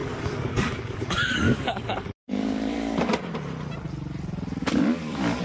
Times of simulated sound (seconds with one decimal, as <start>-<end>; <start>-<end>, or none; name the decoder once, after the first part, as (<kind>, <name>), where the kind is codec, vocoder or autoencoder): 0.0-3.2 (codec, DAC); 4.6-5.4